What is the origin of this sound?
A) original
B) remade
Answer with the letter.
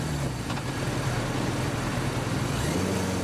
A